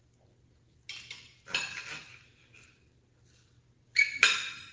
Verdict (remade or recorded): recorded